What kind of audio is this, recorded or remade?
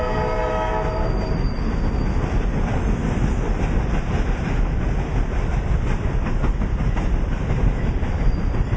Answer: recorded